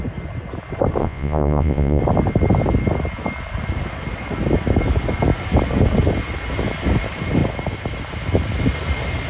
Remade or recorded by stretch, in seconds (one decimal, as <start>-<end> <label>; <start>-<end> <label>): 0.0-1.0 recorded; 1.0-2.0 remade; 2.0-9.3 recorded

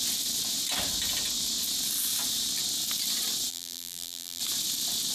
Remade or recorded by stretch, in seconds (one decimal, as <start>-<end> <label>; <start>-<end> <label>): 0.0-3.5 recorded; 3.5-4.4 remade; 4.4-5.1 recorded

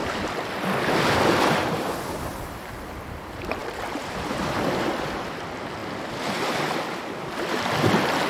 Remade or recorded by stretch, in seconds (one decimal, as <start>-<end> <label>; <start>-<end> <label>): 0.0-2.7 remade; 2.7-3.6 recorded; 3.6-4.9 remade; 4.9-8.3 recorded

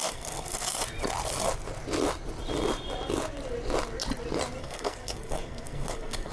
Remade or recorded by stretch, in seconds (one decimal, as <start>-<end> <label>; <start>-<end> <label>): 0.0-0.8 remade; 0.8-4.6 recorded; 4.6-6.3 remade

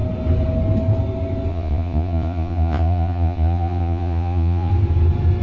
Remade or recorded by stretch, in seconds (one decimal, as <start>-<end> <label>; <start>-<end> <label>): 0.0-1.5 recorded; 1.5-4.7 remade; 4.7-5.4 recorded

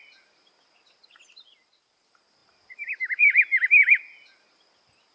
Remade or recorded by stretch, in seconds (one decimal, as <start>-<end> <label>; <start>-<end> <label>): 0.0-5.1 recorded

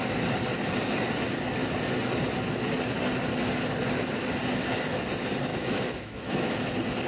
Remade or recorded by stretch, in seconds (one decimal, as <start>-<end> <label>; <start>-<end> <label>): 0.0-5.5 recorded; 5.5-6.5 remade; 6.5-7.1 recorded

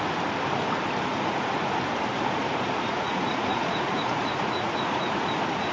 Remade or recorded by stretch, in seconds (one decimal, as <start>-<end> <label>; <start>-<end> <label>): 0.0-1.1 recorded; 1.1-1.7 remade; 1.7-2.1 recorded; 2.1-5.7 remade